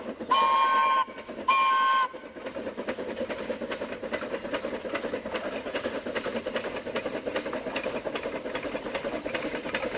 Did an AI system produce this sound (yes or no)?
no